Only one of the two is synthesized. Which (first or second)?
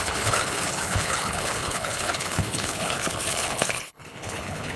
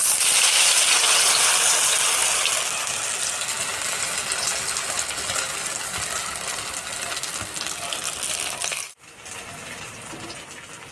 first